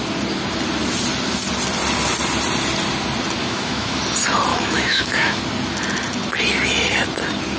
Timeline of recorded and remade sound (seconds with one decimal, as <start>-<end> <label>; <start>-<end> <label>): 0.0-3.4 recorded; 3.4-4.0 remade; 4.0-4.5 recorded; 4.5-5.4 remade; 5.4-7.6 recorded